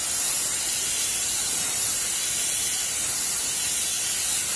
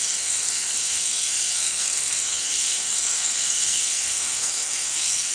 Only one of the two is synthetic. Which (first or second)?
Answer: second